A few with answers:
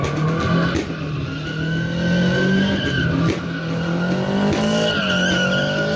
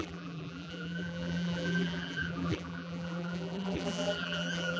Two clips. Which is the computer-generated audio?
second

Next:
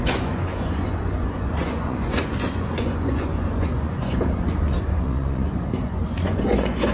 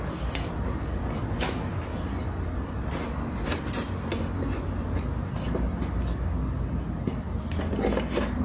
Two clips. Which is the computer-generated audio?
first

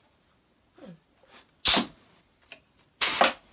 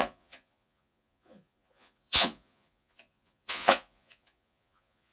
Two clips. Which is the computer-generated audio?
second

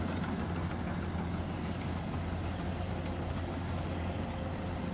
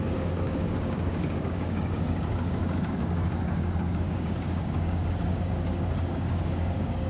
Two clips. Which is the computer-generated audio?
second